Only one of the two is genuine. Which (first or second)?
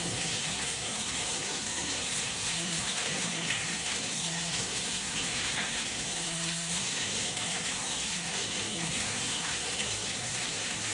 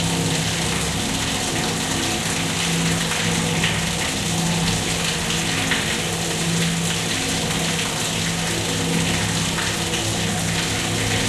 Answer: second